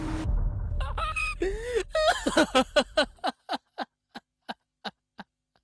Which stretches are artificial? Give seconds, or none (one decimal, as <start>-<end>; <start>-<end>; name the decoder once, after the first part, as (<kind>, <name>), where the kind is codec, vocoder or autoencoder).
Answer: none